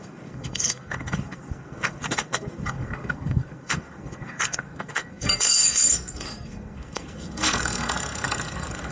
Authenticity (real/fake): fake